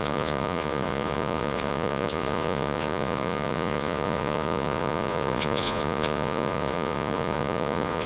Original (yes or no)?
no